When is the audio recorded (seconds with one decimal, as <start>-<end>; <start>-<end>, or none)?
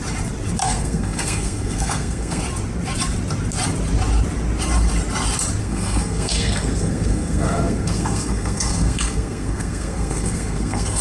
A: 0.0-0.6; 2.4-5.6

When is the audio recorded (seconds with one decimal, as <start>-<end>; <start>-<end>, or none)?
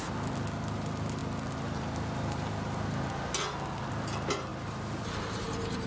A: 0.0-5.9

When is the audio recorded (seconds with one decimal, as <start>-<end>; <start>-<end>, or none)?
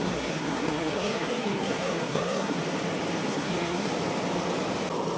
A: 2.6-3.3; 3.9-5.2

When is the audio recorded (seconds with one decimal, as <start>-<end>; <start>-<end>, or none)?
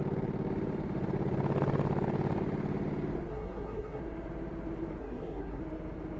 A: 0.0-3.3; 4.0-5.0; 5.6-6.2